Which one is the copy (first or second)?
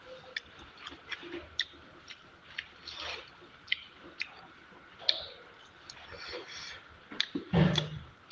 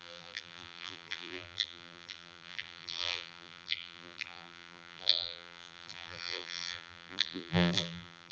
second